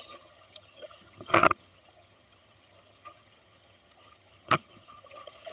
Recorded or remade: remade